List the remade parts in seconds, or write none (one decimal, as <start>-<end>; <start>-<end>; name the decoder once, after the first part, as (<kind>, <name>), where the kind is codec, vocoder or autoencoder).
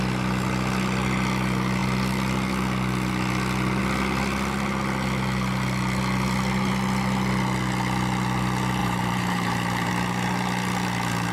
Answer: 8.8-9.9 (vocoder, BigVGAN v2)